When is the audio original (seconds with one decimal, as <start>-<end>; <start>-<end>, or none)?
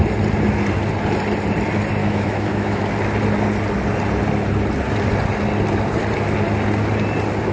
0.0-2.0; 2.8-7.5